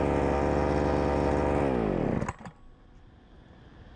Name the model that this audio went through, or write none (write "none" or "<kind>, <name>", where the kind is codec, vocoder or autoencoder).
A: none